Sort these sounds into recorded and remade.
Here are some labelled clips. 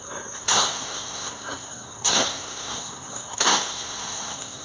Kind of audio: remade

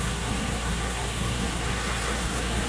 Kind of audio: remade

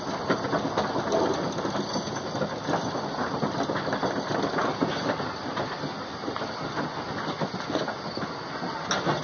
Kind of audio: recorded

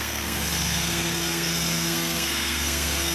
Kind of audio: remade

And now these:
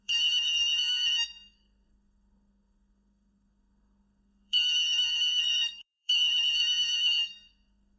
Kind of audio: remade